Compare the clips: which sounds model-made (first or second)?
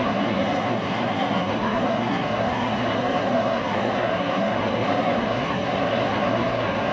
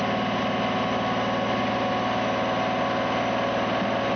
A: first